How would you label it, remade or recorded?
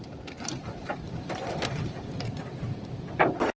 recorded